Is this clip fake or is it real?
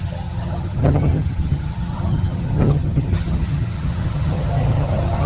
fake